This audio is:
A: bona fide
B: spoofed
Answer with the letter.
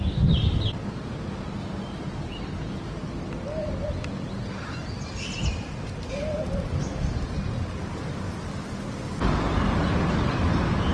A